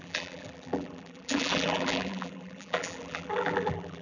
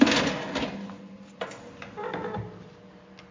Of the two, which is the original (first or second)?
second